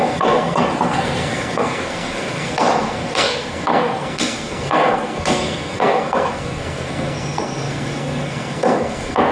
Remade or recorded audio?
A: remade